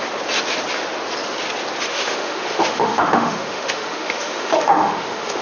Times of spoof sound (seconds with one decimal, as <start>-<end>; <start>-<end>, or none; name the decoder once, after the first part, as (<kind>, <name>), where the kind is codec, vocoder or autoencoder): 1.9-5.4 (autoencoder, DAC-VAE)